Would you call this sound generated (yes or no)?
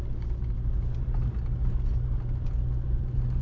no